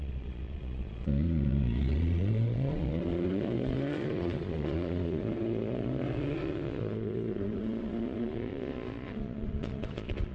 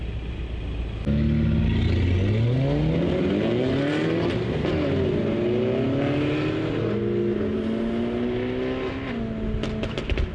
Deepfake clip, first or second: first